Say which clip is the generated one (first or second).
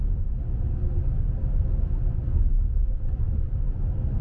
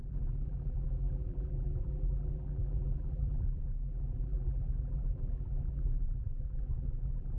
second